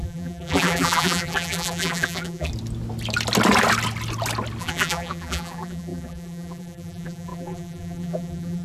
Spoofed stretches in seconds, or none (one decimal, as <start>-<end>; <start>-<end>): 0.0-2.5; 4.6-8.6